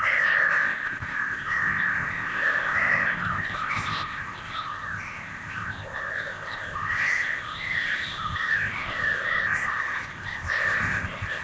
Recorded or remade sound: remade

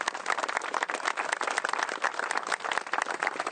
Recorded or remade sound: recorded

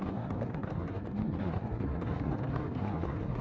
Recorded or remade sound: remade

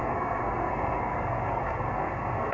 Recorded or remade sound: remade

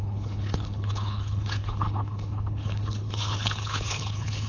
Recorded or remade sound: remade